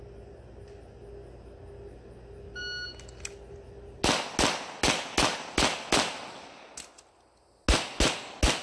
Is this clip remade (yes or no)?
no